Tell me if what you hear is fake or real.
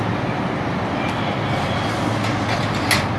real